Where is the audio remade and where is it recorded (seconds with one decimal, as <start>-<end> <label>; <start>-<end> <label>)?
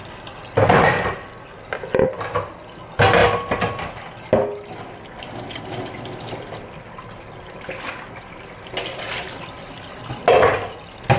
0.0-11.2 recorded